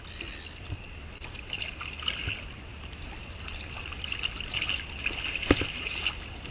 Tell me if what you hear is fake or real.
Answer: real